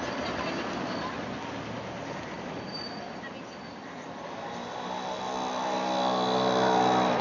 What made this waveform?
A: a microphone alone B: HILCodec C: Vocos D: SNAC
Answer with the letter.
A